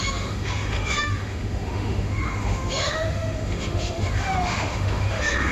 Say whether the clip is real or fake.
fake